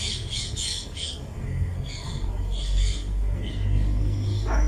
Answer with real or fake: fake